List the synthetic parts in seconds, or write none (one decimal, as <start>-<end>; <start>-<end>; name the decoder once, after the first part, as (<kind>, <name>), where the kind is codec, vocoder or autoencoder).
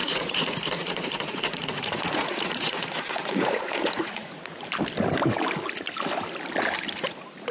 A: 0.0-4.4 (vocoder, Vocos)